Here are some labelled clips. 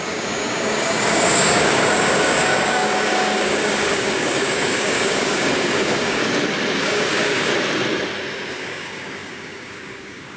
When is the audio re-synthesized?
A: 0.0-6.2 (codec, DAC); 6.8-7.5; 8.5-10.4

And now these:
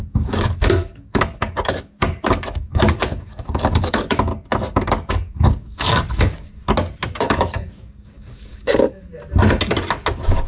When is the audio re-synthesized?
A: 0.0-4.3 (codec, DAC); 4.8-6.6; 7.1-9.1

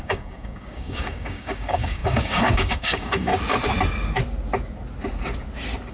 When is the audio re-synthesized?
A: 0.0-3.3 (codec, DAC)

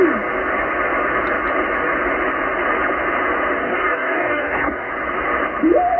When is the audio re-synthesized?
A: 3.6-4.9 (codec, DAC)

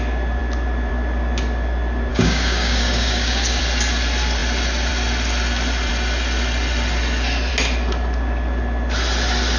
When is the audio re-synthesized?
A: 2.1-3.6 (codec, DAC)

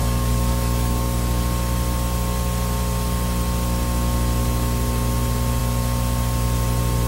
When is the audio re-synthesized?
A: 0.0-1.4 (codec, DAC)

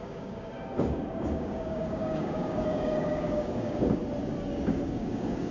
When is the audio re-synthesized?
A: 0.0-4.0 (codec, DAC); 4.5-5.5